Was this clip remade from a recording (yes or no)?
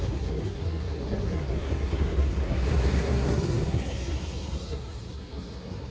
yes